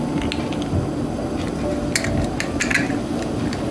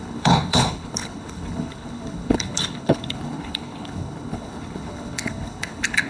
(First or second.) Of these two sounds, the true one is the first